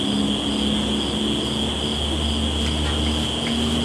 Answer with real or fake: real